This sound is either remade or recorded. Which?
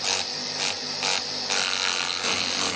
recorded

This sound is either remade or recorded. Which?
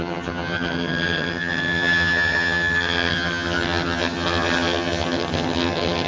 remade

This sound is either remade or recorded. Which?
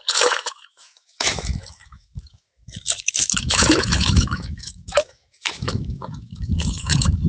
remade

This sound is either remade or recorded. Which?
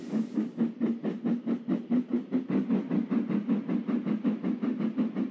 recorded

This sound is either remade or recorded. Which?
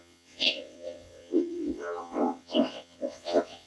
remade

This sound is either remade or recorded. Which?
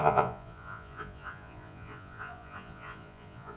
remade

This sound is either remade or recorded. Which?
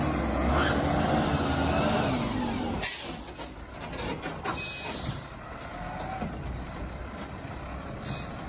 recorded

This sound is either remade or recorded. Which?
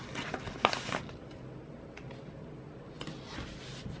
recorded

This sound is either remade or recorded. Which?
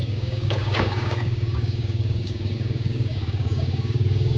remade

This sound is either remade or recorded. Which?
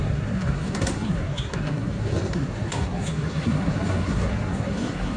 remade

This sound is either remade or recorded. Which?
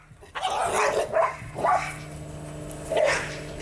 recorded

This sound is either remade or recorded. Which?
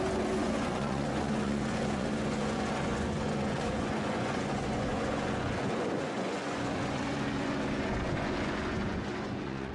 remade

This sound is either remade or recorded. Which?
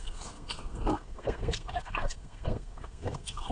remade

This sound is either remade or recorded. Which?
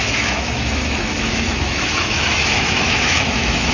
remade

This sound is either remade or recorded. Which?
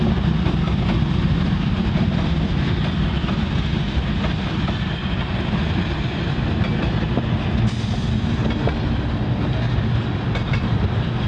recorded